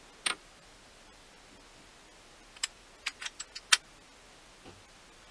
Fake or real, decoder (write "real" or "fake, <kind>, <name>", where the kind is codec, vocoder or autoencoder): real